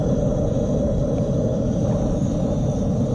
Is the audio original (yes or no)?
yes